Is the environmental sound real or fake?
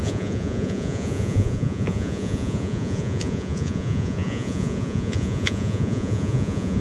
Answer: fake